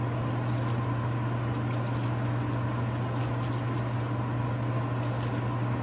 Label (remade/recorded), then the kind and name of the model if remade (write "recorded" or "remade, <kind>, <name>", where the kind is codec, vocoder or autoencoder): recorded